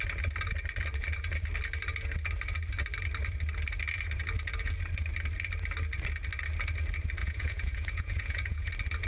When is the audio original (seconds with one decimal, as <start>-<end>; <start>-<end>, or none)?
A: 0.0-7.2; 8.7-9.1